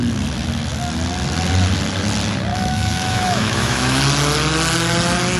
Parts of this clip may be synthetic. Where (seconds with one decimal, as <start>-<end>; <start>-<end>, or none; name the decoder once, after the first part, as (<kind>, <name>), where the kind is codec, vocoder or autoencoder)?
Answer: 2.5-4.0 (autoencoder, DAC-VAE)